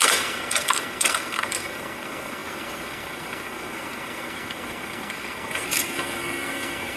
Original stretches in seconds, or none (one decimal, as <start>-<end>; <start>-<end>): none